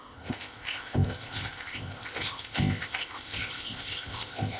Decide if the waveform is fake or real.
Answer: fake